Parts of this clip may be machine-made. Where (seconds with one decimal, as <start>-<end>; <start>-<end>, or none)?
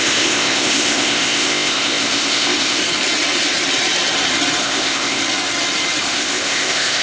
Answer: 0.0-2.8; 4.6-5.2; 6.0-7.0